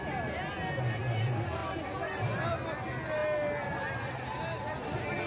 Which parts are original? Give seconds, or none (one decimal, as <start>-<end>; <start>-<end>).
0.0-5.3